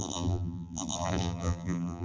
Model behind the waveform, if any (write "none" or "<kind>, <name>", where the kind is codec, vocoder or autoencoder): vocoder, BigVGAN v2